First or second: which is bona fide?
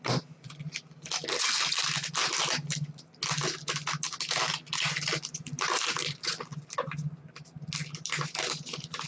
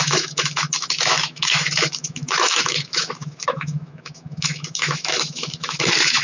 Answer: first